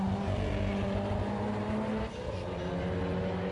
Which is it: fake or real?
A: real